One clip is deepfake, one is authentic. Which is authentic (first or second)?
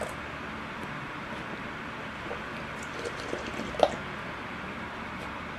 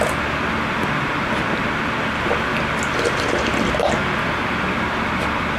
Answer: second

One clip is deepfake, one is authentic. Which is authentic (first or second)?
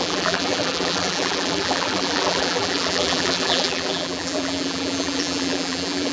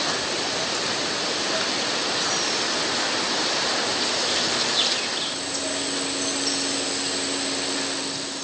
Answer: second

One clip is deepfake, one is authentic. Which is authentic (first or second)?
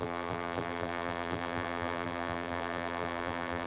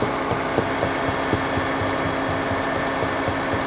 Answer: second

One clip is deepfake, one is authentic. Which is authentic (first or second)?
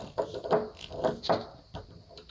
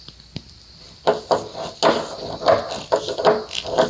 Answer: second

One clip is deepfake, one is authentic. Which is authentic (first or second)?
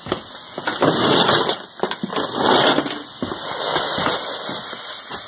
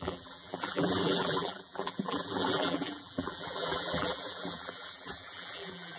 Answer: first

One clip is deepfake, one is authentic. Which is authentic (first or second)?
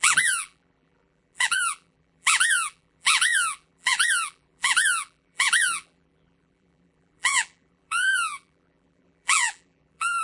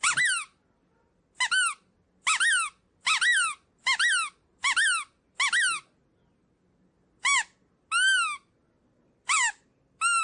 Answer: second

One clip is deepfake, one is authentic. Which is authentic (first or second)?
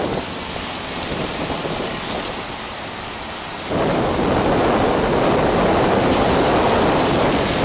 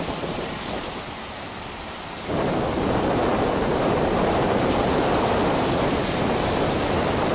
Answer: first